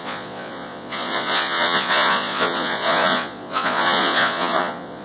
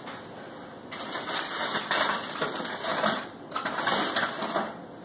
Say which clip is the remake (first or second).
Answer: first